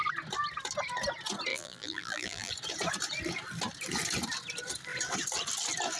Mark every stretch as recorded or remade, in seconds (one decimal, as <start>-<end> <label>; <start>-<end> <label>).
0.0-1.5 recorded; 1.5-2.5 remade; 2.5-6.0 recorded